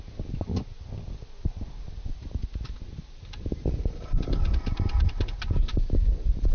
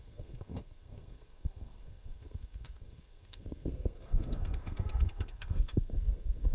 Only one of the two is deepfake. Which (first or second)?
second